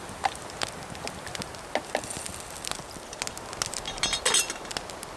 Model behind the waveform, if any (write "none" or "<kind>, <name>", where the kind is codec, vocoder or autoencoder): none